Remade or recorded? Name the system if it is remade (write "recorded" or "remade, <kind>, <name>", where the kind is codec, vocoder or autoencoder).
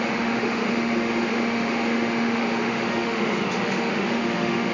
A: remade, autoencoder, DAC-VAE